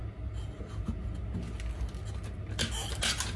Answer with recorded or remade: recorded